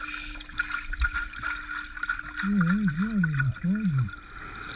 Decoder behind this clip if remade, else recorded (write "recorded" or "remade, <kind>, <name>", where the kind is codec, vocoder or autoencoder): recorded